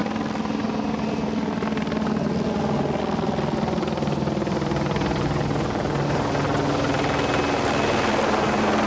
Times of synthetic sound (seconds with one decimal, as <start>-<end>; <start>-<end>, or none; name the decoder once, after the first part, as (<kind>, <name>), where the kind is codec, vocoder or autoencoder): none

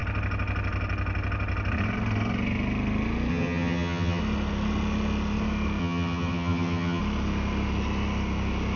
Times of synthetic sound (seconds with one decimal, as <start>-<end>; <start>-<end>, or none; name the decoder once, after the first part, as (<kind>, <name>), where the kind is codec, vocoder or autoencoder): 3.3-4.2 (vocoder, HiFi-GAN); 5.8-7.0

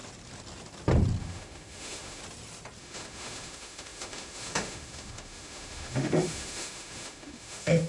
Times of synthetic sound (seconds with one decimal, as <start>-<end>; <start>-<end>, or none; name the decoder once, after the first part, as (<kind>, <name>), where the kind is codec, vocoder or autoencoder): 1.2-2.2 (autoencoder, DAC-VAE); 2.8-7.9

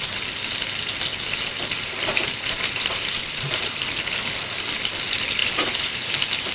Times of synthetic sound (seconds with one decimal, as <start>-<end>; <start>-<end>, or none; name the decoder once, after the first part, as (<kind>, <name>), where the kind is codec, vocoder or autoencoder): 2.1-3.8 (vocoder, BigVGAN v2); 5.4-6.5

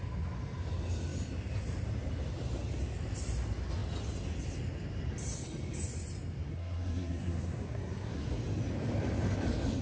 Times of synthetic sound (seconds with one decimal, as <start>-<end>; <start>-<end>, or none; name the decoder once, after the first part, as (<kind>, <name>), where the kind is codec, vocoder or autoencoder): 6.5-8.4 (codec, SNAC)